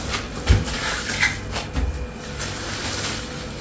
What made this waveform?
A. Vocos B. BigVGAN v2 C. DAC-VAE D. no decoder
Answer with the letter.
D